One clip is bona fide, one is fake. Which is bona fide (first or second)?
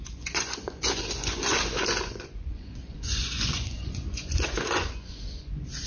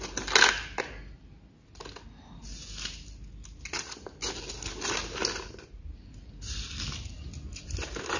second